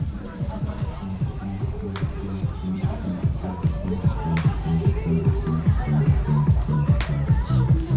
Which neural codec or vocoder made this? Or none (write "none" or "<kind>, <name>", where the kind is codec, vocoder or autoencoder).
vocoder, BigVGAN v2